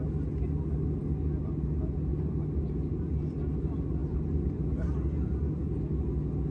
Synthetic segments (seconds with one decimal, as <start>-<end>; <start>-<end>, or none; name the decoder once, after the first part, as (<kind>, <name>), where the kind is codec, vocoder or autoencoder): none

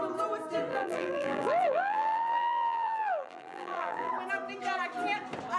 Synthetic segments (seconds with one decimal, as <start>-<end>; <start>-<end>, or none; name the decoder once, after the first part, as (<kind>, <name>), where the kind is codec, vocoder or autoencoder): 0.7-4.1 (vocoder, BigVGAN v2)

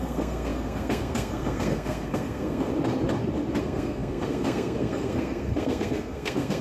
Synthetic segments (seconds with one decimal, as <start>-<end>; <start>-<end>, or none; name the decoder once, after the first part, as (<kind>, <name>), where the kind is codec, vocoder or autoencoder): 0.0-2.7 (codec, SNAC); 3.6-6.6

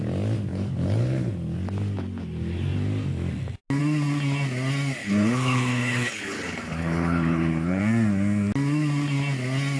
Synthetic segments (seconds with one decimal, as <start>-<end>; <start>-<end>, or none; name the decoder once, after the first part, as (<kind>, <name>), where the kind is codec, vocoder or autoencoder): 0.5-1.3 (codec, HILCodec); 5.0-7.8